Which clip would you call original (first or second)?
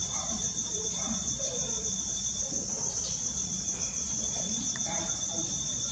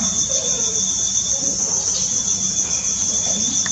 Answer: second